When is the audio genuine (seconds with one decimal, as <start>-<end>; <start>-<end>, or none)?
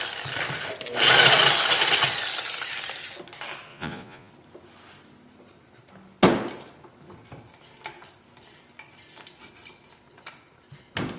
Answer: 0.0-3.7; 4.3-11.2